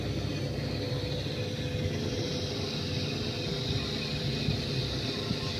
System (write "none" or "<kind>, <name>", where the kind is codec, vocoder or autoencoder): none